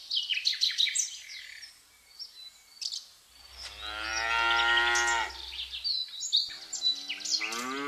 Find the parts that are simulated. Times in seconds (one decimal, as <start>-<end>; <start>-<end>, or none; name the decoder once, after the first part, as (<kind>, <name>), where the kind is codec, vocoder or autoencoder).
none